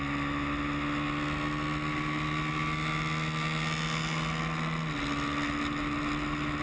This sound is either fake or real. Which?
real